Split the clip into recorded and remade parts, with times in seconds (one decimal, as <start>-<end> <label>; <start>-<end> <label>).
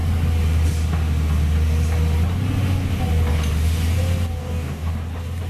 0.0-4.4 recorded; 4.4-4.9 remade; 4.9-5.5 recorded